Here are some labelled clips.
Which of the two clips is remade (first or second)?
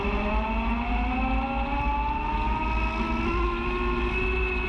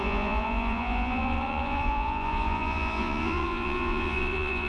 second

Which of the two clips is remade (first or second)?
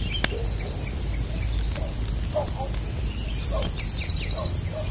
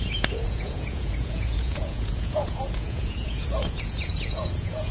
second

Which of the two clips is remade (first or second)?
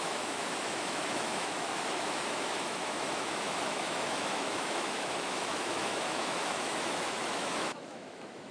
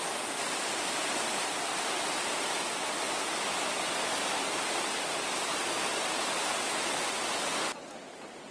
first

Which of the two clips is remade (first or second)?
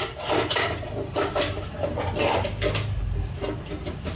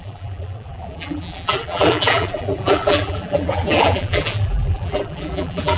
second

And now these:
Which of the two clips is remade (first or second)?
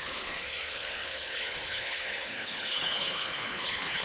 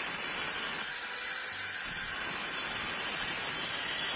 first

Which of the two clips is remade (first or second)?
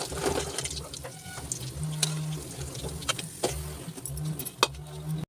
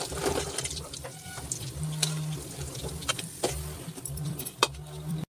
second